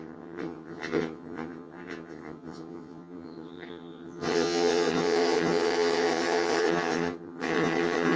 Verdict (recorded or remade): remade